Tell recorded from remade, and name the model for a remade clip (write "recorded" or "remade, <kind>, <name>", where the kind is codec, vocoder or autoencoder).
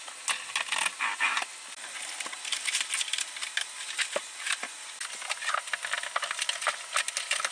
recorded